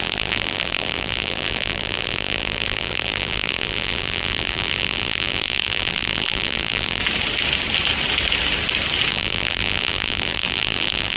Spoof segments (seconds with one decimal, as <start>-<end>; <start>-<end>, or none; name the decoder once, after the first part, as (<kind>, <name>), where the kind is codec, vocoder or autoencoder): 0.0-7.0 (vocoder, BigVGAN v2); 9.1-11.2